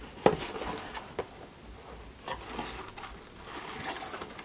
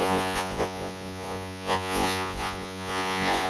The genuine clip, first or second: first